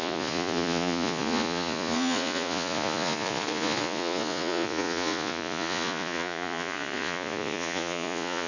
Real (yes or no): no